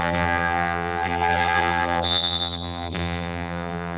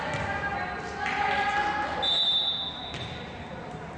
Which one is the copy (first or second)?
first